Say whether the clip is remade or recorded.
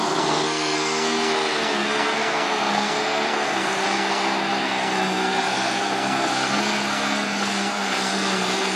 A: remade